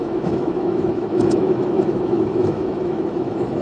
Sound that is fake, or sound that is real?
fake